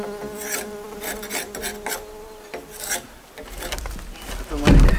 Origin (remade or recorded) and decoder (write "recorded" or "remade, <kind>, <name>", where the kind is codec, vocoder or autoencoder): recorded